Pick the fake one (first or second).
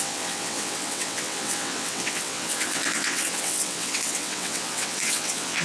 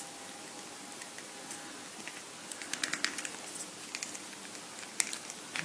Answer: first